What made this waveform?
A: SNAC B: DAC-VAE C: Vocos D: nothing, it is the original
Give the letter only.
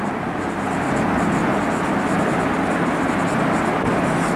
D